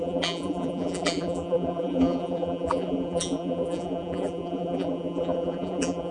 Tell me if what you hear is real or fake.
fake